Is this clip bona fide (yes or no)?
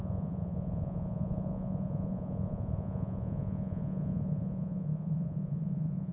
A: no